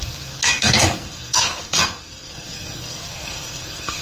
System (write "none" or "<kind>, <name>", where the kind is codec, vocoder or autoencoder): codec, SNAC